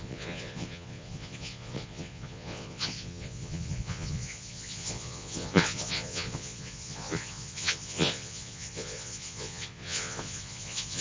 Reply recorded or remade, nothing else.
remade